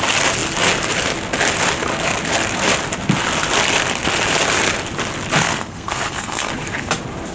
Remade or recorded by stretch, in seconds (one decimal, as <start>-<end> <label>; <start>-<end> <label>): 0.0-5.4 recorded; 5.4-6.5 remade; 6.5-7.3 recorded